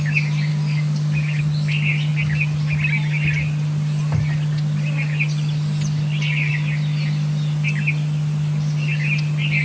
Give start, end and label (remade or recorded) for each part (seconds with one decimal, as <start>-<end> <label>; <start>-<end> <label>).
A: 0.0-0.5 recorded; 0.5-1.4 remade; 1.4-9.6 recorded